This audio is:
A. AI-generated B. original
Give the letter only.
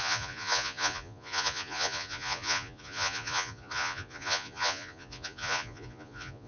A